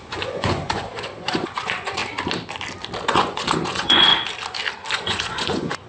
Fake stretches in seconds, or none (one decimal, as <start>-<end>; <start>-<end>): 0.0-2.0; 3.1-4.1; 4.9-5.9